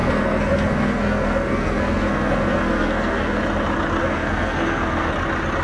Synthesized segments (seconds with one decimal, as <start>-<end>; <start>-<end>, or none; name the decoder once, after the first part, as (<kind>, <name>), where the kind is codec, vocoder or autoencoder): 0.0-3.4 (codec, SNAC); 4.0-5.1